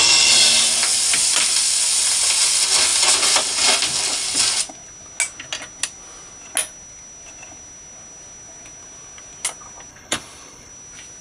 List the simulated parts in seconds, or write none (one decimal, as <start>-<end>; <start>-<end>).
9.9-10.7